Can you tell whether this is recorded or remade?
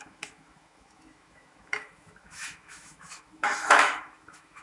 remade